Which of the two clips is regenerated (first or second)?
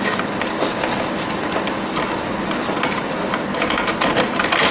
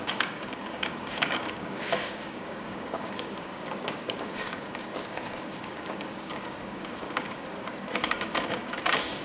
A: second